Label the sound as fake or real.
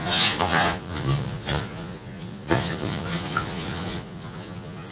fake